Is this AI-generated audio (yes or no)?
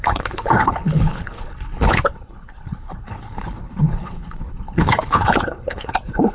yes